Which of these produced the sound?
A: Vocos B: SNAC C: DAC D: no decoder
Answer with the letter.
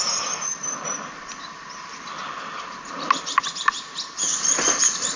D